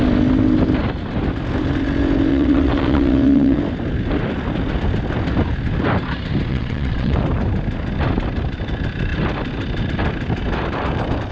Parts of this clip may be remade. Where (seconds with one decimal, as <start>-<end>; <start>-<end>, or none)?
2.3-3.6; 6.5-7.2